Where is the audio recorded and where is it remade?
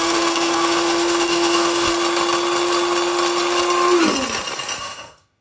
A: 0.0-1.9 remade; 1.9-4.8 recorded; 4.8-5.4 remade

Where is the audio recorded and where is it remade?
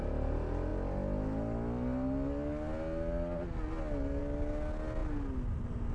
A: 0.0-5.9 recorded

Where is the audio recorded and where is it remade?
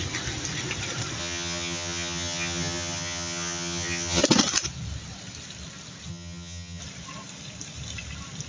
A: 0.0-1.2 recorded; 1.2-4.2 remade; 4.2-6.1 recorded; 6.1-6.8 remade; 6.8-8.5 recorded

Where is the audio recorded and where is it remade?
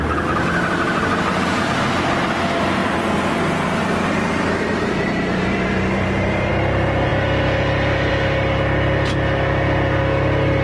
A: 0.0-2.8 recorded; 2.8-6.5 remade; 6.5-10.6 recorded